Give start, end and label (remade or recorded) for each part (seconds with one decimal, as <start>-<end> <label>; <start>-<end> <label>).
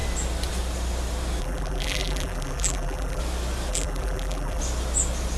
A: 0.0-1.4 recorded; 1.4-3.2 remade; 3.2-3.7 recorded; 3.7-4.6 remade; 4.6-5.4 recorded